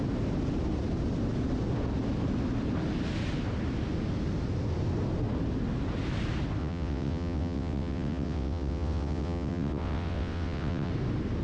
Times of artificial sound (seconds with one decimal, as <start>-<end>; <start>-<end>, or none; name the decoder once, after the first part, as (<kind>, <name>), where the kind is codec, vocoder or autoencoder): 6.6-10.9 (vocoder, WaveNeXt)